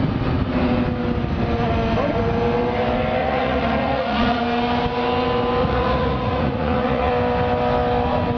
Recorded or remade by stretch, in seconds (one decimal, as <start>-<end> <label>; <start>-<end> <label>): 0.0-3.2 recorded; 3.2-4.4 remade; 4.4-5.6 recorded; 5.6-7.1 remade; 7.1-8.4 recorded